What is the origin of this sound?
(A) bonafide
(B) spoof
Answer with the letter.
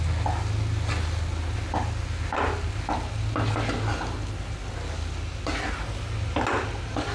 A